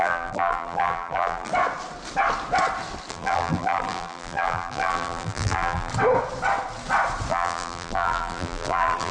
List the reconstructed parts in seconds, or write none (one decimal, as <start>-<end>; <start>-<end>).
0.0-1.5; 3.1-5.9; 7.3-9.1